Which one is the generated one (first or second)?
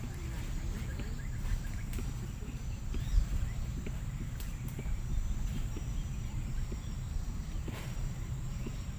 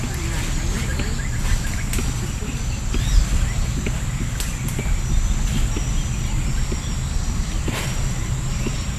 first